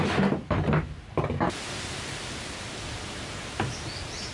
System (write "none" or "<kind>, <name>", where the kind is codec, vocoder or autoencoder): none